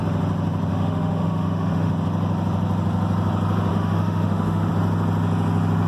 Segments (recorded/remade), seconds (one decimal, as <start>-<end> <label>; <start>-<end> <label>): 0.0-0.7 recorded; 0.7-1.9 remade; 1.9-3.7 recorded; 3.7-4.7 remade; 4.7-5.9 recorded